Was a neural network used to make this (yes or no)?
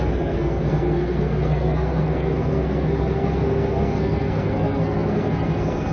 yes